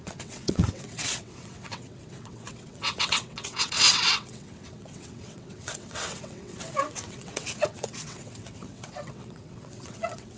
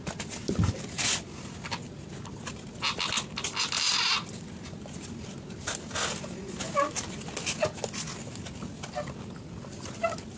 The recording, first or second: second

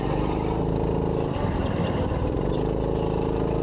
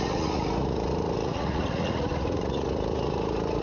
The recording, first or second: first